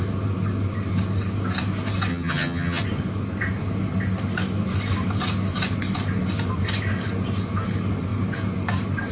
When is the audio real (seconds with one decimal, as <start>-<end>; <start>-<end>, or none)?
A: 0.0-2.1; 2.8-9.1